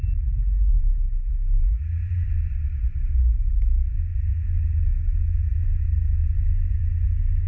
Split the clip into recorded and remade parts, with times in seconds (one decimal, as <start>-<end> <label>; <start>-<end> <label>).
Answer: 0.0-0.7 recorded; 0.7-1.8 remade; 1.8-7.5 recorded